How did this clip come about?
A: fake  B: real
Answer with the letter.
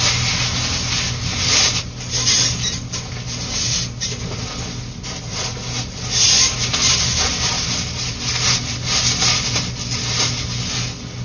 B